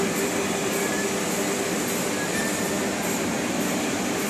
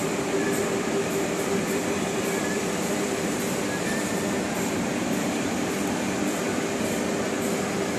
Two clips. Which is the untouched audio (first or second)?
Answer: first